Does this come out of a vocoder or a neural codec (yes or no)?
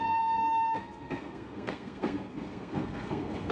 yes